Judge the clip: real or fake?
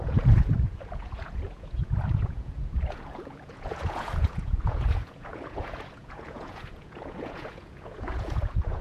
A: fake